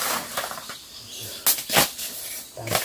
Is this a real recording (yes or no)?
yes